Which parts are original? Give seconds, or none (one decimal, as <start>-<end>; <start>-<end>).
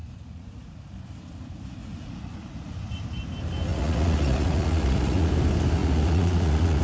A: 0.8-1.8; 2.8-3.7; 5.3-5.8